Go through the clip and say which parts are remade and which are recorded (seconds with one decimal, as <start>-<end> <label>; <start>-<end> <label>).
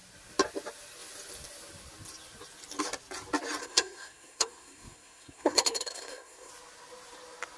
0.0-3.6 recorded; 3.6-6.5 remade; 6.5-7.6 recorded